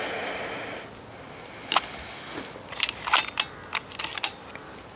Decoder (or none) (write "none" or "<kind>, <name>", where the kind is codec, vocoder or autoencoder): none